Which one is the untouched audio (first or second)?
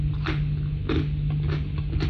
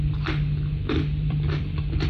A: first